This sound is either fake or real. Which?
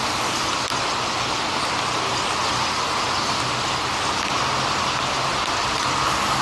real